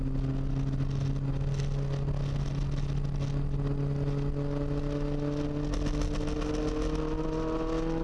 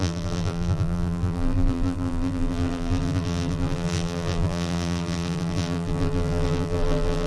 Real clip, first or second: first